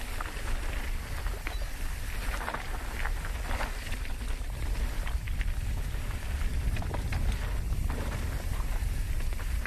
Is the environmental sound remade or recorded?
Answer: recorded